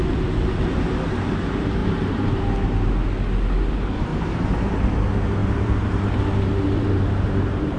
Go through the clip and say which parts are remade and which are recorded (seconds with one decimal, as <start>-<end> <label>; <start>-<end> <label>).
0.0-1.8 recorded; 1.8-2.4 remade; 2.4-4.1 recorded; 4.1-4.7 remade; 4.7-5.4 recorded; 5.4-7.8 remade